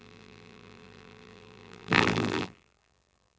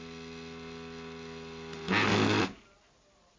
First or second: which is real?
second